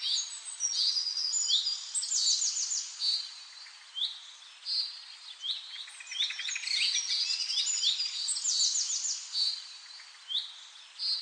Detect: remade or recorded recorded